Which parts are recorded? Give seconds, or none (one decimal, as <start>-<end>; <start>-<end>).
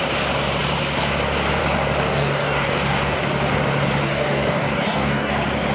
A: 0.0-2.1; 3.2-4.0; 5.3-5.7